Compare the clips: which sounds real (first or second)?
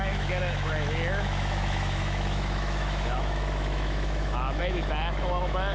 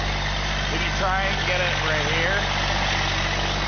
second